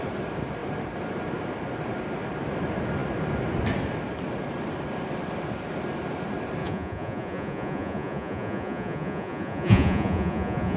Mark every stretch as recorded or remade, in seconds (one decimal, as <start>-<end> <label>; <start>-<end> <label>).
0.0-6.6 recorded; 6.6-10.8 remade